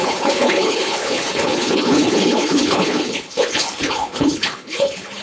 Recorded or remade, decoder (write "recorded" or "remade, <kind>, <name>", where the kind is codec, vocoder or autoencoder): remade, codec, HILCodec